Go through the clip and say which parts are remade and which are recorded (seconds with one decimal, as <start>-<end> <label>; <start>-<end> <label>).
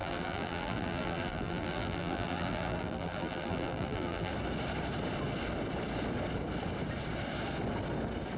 0.0-4.3 remade; 4.3-8.4 recorded